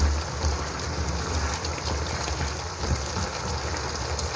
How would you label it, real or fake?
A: real